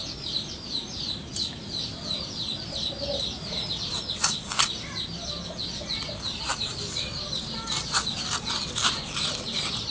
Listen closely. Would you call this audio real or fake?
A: fake